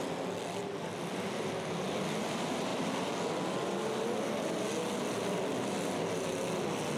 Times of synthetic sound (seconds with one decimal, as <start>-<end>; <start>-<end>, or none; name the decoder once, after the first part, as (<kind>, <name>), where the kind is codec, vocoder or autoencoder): none

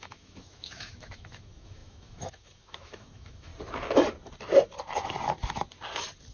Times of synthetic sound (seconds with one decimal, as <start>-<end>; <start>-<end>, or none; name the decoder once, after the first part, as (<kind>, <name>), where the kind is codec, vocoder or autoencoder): 0.0-3.5 (autoencoder, DAC-VAE)